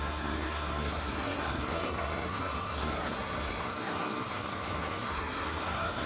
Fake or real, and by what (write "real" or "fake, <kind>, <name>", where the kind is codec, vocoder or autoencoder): fake, codec, SNAC